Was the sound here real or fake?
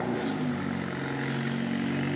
real